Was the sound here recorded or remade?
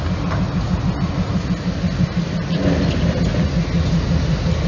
recorded